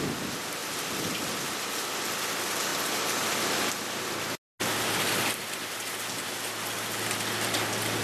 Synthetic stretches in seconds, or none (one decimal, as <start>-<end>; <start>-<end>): none